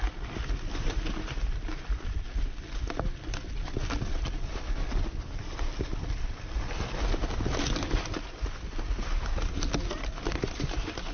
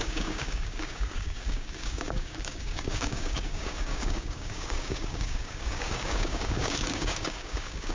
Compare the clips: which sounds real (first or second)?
first